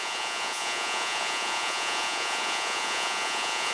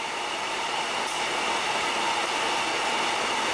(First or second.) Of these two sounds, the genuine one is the second